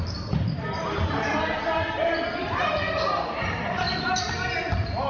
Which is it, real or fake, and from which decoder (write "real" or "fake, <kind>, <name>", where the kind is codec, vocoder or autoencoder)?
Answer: real